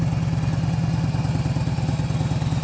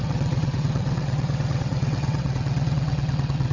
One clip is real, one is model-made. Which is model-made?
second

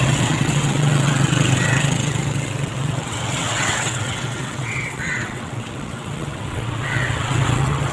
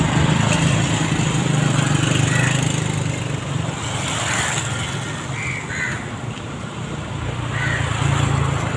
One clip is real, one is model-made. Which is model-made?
first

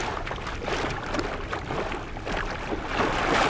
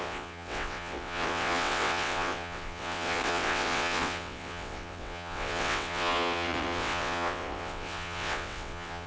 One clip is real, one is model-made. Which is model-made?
second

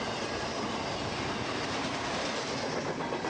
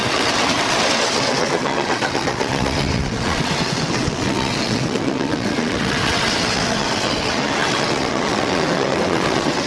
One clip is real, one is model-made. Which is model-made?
second